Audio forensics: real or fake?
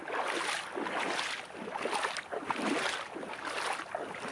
real